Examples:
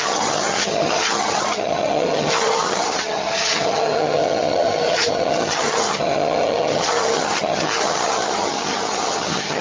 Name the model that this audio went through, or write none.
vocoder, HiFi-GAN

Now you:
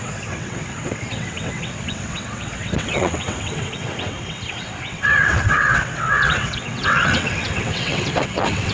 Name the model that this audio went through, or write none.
vocoder, WaveNeXt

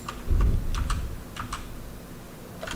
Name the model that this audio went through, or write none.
none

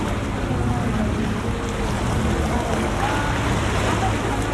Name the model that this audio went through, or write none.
none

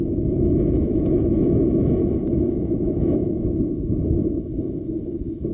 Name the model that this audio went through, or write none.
autoencoder, DAC-VAE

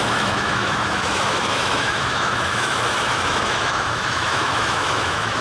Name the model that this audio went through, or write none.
autoencoder, DAC-VAE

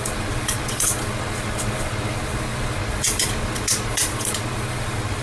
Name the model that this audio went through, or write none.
vocoder, Vocos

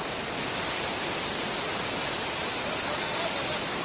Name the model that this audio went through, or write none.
none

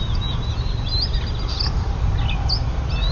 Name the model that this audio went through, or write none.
none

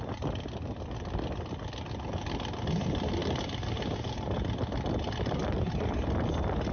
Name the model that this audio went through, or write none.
none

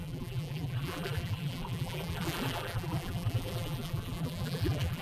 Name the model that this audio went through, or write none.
vocoder, BigVGAN v2